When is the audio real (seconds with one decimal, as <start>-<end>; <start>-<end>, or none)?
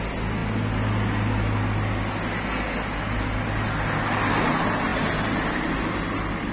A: 0.0-6.5